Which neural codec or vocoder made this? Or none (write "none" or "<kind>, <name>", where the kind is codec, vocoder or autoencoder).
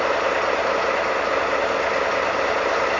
none